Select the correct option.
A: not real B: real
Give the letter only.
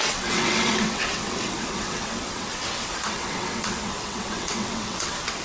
A